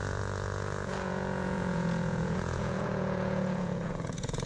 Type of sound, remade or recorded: remade